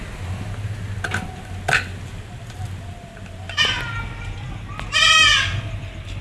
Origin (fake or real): real